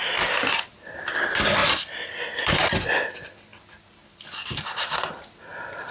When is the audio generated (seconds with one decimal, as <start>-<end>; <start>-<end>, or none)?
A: none